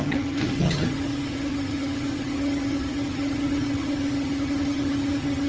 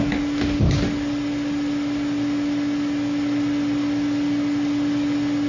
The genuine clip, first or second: second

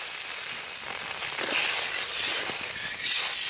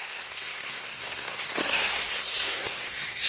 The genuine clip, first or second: first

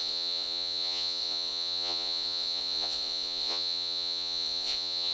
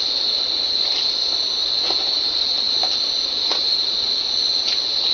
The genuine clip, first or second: second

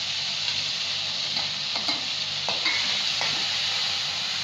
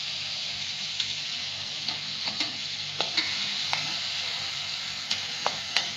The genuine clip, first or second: first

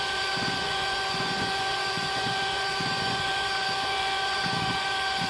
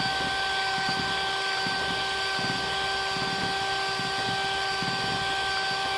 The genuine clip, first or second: second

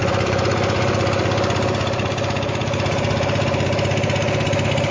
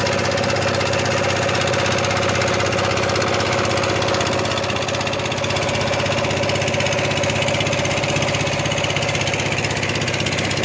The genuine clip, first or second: second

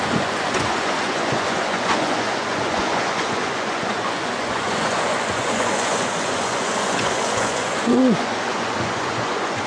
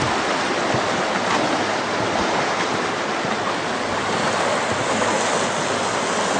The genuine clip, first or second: second